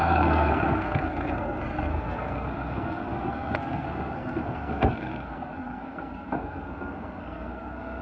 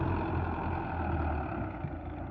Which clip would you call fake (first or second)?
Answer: first